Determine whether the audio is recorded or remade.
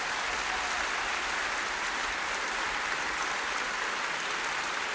recorded